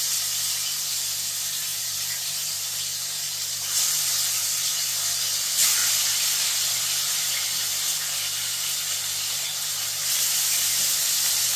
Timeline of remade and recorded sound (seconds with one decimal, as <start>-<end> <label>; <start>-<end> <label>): 0.0-11.6 recorded